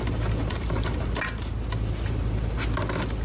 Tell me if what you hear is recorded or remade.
recorded